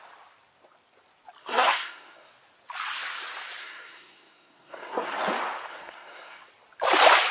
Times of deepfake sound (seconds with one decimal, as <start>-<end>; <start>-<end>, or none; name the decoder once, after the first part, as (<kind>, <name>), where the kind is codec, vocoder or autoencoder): 1.4-2.3 (codec, SNAC); 3.6-5.1; 5.7-6.5